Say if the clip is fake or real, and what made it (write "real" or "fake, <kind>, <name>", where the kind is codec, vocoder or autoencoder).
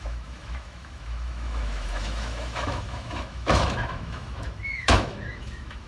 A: fake, autoencoder, DAC-VAE